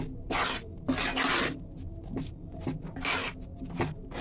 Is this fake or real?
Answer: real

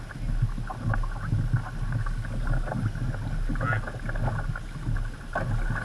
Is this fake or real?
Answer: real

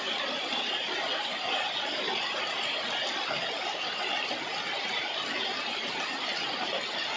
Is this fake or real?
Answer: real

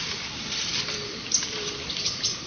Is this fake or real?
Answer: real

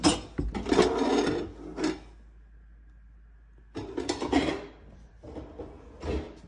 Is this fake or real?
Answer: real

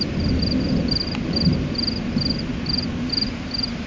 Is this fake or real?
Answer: real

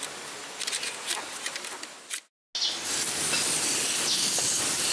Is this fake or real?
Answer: real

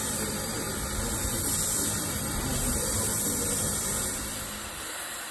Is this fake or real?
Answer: fake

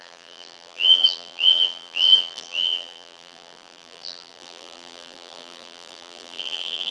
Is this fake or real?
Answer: fake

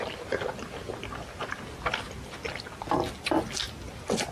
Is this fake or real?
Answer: real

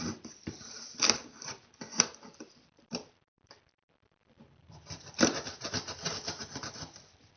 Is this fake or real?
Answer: fake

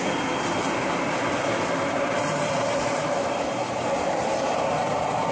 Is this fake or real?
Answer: fake